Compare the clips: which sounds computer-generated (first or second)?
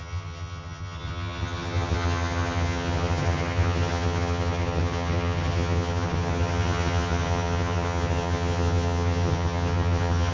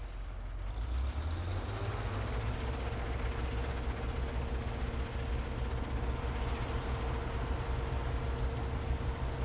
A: first